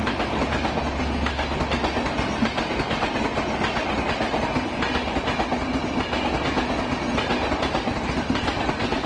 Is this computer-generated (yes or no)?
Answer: no